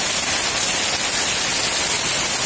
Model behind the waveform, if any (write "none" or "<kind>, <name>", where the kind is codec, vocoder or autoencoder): none